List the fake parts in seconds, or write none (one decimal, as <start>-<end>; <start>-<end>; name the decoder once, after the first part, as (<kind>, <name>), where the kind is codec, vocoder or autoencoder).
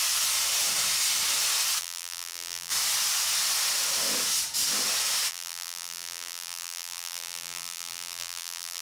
1.8-2.7 (vocoder, BigVGAN v2); 5.3-8.8